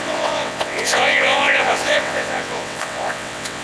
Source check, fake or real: fake